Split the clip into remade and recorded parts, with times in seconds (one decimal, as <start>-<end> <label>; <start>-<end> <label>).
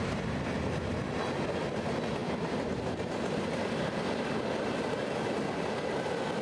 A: 0.0-6.4 recorded